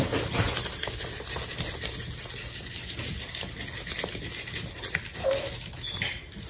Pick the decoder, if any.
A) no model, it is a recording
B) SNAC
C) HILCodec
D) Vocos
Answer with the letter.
A